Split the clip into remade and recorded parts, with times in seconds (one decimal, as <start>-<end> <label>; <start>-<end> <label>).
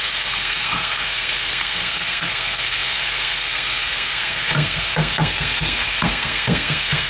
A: 0.0-7.1 remade